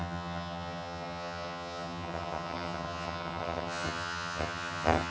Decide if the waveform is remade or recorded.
remade